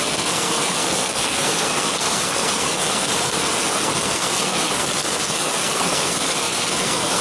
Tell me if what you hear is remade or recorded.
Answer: remade